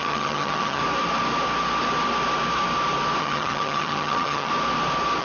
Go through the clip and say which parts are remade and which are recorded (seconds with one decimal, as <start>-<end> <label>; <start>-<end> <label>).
0.0-0.8 remade; 0.8-3.2 recorded; 3.2-4.5 remade; 4.5-5.2 recorded